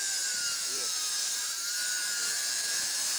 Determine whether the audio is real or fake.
fake